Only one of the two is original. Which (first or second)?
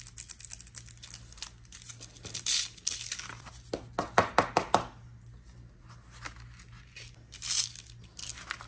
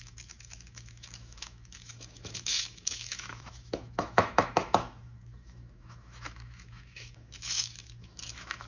first